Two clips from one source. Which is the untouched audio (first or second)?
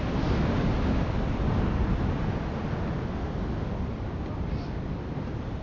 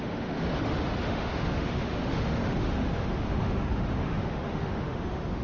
first